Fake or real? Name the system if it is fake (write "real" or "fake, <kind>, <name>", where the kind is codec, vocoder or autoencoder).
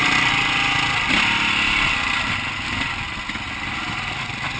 real